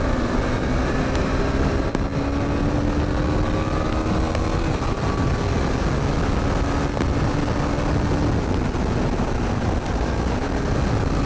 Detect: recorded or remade recorded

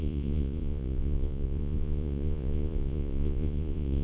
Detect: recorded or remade remade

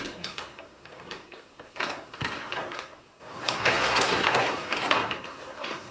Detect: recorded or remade remade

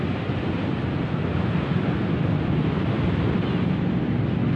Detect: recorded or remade recorded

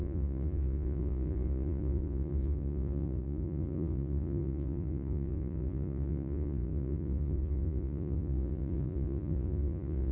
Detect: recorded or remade remade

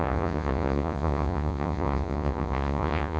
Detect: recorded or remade remade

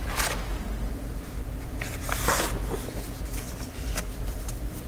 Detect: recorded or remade recorded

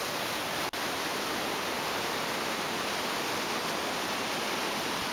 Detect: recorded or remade recorded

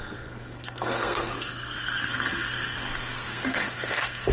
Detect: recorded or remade remade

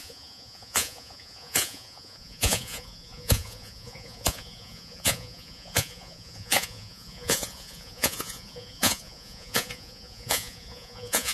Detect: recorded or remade remade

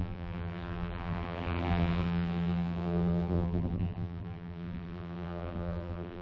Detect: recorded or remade remade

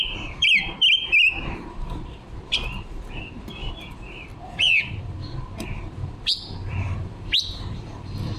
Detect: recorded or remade remade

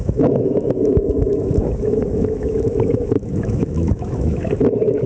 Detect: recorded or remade remade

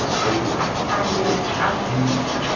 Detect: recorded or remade recorded